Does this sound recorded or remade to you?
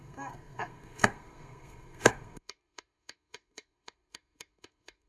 remade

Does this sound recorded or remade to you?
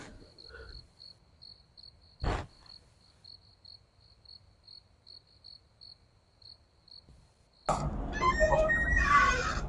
recorded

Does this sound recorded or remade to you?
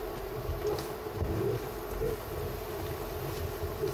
recorded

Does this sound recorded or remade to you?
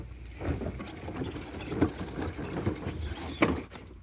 recorded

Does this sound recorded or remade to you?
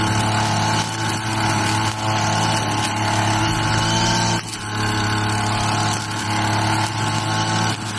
recorded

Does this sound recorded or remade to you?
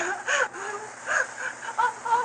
recorded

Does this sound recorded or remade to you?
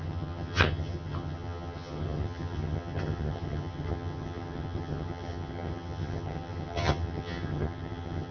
remade